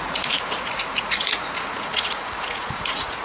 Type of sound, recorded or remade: remade